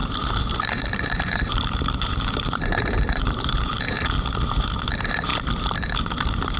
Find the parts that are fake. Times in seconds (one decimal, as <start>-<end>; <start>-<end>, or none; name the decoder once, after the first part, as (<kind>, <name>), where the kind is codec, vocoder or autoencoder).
0.0-4.0 (vocoder, BigVGAN v2)